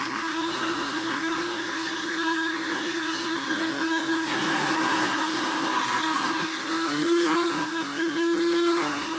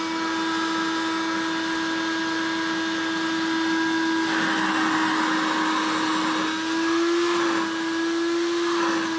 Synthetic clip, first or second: first